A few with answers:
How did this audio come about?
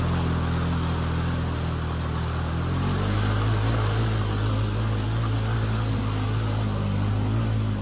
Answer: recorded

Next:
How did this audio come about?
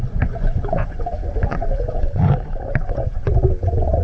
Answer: remade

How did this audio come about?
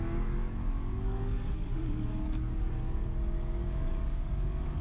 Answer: remade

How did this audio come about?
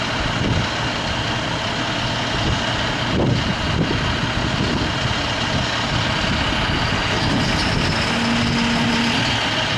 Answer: recorded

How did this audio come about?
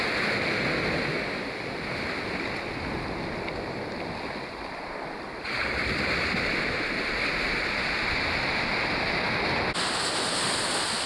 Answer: recorded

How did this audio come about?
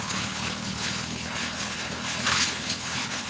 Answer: remade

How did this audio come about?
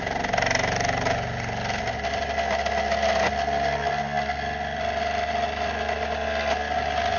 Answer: recorded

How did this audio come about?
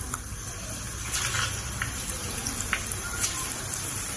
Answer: recorded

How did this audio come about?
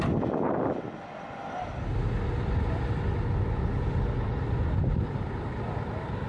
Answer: recorded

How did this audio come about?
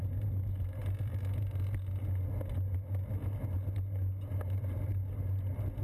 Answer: recorded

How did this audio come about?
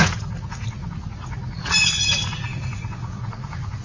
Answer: remade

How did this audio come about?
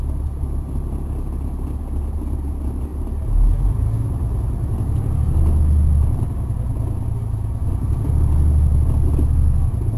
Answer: recorded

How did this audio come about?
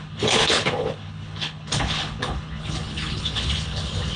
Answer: remade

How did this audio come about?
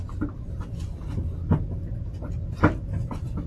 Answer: recorded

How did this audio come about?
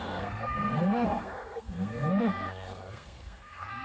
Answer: remade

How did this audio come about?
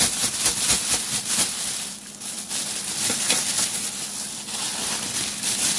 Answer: recorded